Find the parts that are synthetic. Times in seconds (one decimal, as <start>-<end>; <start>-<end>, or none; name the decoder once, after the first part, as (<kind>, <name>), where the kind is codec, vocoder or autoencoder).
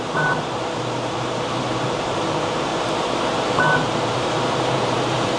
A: 0.0-2.7 (vocoder, BigVGAN v2); 3.9-5.4